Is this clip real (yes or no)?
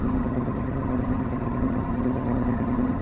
no